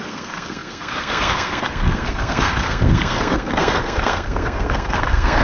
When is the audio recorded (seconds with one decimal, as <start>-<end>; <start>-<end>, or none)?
none